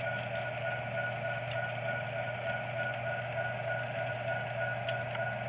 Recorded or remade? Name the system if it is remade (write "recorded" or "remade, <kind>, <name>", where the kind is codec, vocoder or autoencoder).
recorded